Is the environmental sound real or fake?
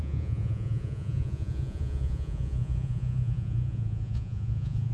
fake